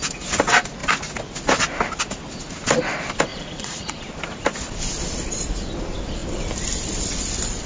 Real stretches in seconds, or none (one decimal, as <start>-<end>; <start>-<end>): 0.0-3.3; 4.1-7.7